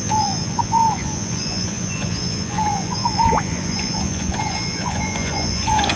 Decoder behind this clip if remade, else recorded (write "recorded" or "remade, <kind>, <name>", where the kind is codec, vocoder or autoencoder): remade, vocoder, Vocos